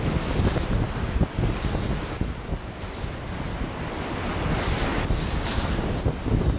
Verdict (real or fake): real